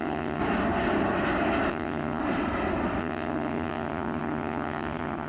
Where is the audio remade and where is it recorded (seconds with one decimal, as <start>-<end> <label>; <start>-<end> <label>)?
0.0-0.4 remade; 0.4-1.7 recorded; 1.7-2.2 remade; 2.2-3.0 recorded; 3.0-5.3 remade